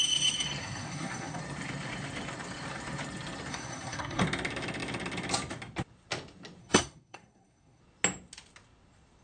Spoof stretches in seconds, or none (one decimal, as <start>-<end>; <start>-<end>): 0.6-1.4; 3.5-4.2; 6.6-7.8